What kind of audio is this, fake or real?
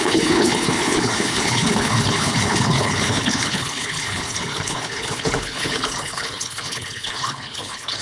fake